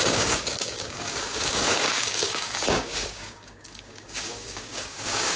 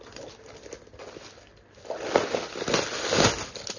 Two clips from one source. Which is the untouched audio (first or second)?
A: second